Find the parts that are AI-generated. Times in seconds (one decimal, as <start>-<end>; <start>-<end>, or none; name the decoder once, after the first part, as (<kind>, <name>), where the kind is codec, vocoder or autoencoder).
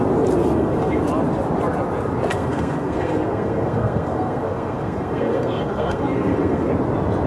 0.4-1.0 (codec, SNAC); 2.3-6.7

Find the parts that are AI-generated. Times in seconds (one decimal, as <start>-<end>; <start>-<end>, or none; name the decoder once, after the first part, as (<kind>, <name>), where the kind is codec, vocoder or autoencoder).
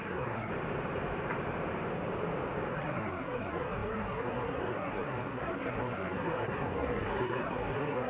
0.0-0.5 (codec, SNAC); 2.7-8.1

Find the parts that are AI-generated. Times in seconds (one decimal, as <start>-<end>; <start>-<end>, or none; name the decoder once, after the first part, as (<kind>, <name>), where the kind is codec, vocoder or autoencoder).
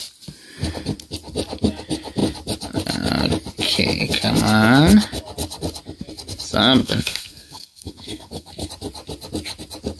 6.8-8.7 (codec, SNAC)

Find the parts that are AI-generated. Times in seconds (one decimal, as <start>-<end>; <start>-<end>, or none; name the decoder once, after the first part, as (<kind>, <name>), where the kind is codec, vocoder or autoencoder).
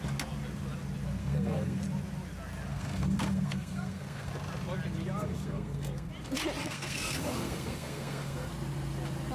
1.2-1.8 (codec, SNAC); 2.7-4.3; 5.2-6.1; 6.6-8.5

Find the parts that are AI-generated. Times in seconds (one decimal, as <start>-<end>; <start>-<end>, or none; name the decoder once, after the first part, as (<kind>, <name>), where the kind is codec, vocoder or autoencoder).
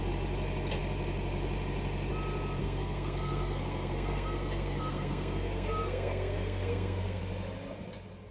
2.6-7.2 (codec, SNAC)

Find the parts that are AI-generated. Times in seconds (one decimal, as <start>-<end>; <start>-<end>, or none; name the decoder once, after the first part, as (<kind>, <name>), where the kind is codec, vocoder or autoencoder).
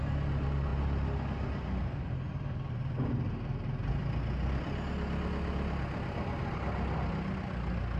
none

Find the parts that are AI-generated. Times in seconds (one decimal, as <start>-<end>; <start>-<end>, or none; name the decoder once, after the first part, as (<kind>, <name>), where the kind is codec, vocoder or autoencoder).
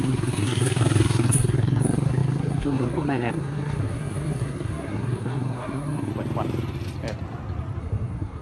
0.0-6.1 (codec, SNAC); 7.8-8.4